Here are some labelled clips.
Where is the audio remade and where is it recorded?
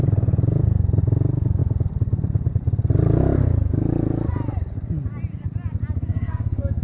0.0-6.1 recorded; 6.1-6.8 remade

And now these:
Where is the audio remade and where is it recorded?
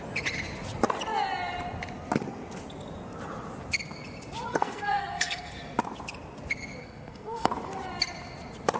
0.0-4.5 recorded; 4.5-5.5 remade; 5.5-6.8 recorded; 6.8-7.5 remade; 7.5-8.8 recorded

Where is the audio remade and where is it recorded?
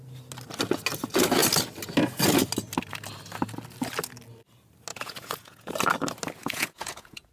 0.0-4.9 recorded; 4.9-5.7 remade; 5.7-6.4 recorded; 6.4-7.3 remade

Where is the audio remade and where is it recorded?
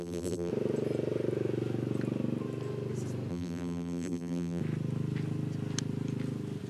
0.0-0.5 remade; 0.5-3.3 recorded; 3.3-4.6 remade; 4.6-6.7 recorded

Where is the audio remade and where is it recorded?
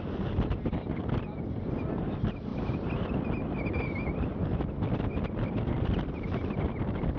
0.0-7.2 recorded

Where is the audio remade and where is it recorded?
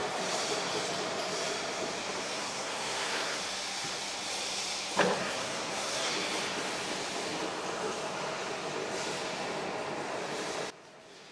0.0-2.2 recorded; 2.2-3.4 remade; 3.4-5.2 recorded; 5.2-6.1 remade; 6.1-11.3 recorded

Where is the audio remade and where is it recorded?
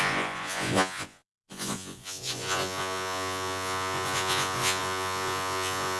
0.0-6.0 remade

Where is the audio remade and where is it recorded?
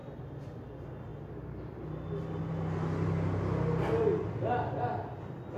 0.0-5.6 recorded